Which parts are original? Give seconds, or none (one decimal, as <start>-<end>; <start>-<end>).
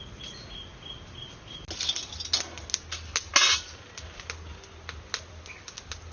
0.0-6.1